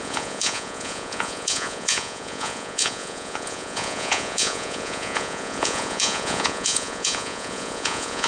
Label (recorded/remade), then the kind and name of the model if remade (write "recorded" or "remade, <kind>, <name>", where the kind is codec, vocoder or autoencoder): remade, vocoder, Vocos